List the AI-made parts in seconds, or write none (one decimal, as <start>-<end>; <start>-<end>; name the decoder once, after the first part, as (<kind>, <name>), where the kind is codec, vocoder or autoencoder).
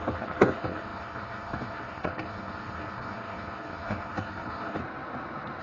0.0-4.8 (codec, SNAC)